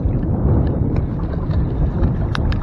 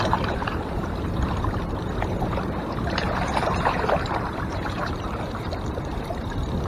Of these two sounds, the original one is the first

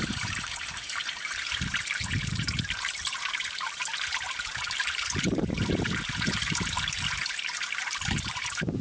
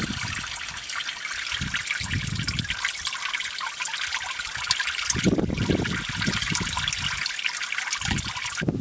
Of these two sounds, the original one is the second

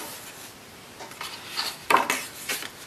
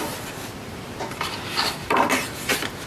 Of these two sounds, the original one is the first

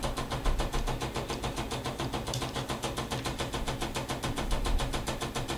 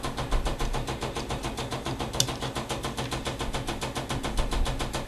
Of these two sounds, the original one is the second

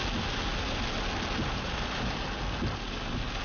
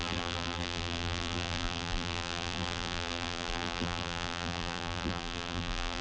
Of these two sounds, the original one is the first